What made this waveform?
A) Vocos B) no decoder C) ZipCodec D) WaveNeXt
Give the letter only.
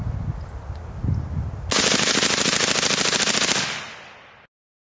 B